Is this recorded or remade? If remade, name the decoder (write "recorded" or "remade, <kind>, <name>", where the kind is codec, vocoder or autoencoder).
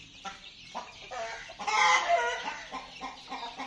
recorded